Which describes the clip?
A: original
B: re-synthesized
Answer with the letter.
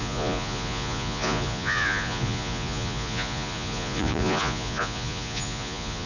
B